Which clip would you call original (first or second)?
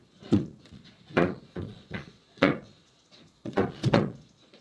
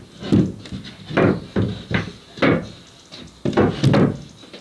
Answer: second